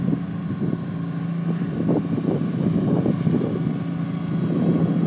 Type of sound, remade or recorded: recorded